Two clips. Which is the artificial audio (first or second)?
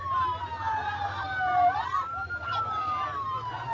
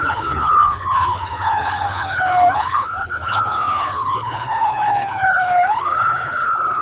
second